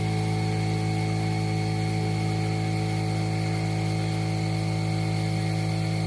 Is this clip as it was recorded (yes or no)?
yes